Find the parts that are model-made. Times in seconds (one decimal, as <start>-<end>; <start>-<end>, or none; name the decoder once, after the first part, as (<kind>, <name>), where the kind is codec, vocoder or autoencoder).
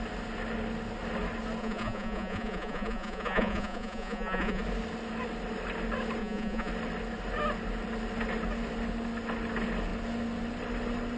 1.6-4.6 (vocoder, Vocos); 6.2-6.7